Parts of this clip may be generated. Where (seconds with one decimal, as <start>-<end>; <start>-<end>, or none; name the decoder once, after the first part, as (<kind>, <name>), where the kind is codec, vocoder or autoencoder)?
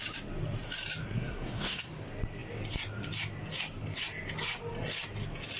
1.0-1.9 (codec, SNAC)